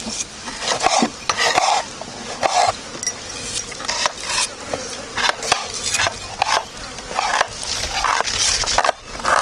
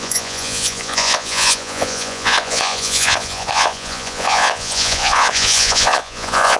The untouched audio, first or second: first